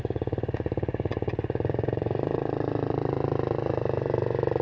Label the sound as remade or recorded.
remade